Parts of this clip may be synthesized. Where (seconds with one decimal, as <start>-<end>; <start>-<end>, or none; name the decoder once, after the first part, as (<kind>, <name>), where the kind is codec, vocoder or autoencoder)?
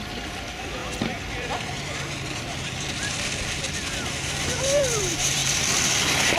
0.0-6.4 (vocoder, BigVGAN v2)